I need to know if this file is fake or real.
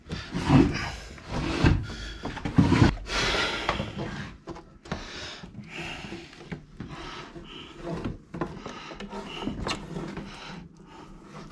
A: real